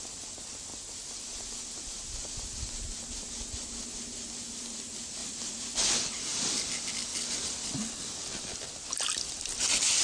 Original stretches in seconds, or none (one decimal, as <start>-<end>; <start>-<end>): 0.0-0.7; 2.7-5.2; 5.9-7.1